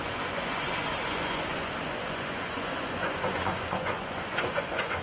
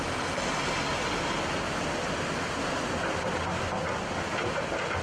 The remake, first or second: first